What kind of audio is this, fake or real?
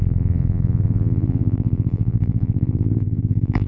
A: fake